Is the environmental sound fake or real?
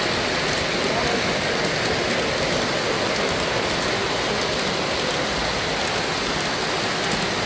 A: real